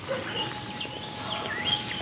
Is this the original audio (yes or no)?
yes